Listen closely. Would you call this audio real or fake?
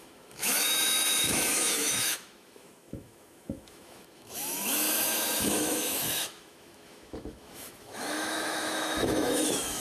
fake